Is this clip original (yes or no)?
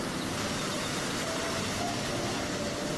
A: no